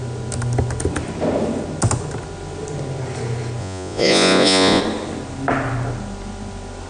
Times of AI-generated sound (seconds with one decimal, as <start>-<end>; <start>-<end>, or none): 3.6-4.8